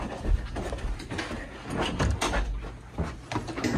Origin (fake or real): real